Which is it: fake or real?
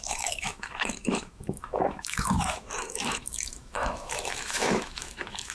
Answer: fake